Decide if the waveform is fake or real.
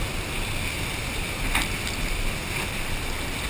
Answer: real